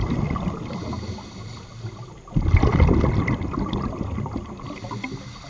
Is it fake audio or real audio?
real